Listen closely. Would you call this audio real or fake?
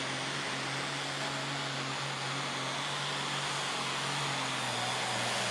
real